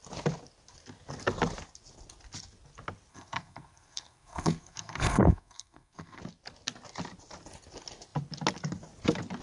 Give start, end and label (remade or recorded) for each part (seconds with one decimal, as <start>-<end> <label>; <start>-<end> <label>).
0.0-3.1 recorded; 3.1-6.2 remade; 6.2-9.4 recorded